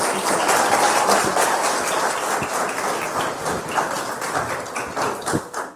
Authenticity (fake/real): real